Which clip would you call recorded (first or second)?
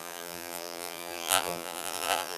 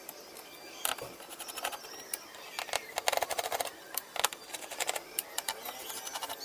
second